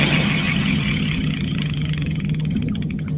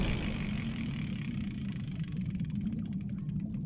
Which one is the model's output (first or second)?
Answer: first